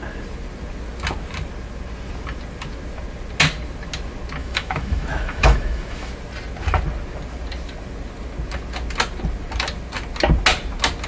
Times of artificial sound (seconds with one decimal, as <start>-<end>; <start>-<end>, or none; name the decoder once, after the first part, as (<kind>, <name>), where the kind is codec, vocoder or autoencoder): 4.4-6.1 (autoencoder, DAC-VAE)